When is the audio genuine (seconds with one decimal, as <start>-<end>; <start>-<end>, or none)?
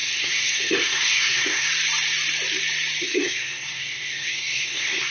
1.7-3.0